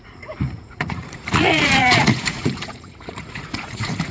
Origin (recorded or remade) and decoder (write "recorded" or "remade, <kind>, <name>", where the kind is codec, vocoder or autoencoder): remade, vocoder, Vocos